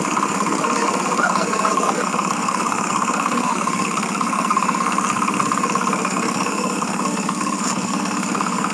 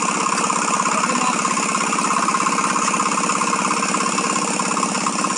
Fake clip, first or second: first